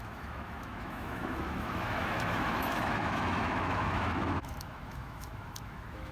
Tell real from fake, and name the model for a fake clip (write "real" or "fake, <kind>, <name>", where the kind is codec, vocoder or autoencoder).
fake, autoencoder, DAC-VAE